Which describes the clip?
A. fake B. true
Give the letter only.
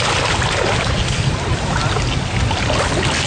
B